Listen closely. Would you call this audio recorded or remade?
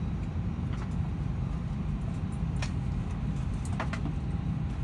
recorded